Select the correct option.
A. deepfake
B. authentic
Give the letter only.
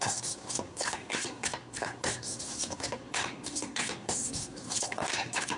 A